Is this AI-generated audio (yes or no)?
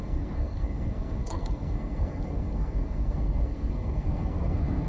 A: yes